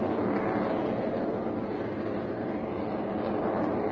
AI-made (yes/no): no